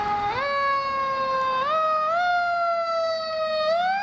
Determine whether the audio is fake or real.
real